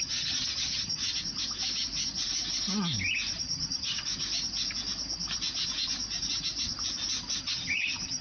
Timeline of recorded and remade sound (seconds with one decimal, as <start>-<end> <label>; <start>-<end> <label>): 0.0-1.0 remade; 1.0-3.4 recorded; 3.4-4.1 remade; 4.1-7.4 recorded; 7.4-8.2 remade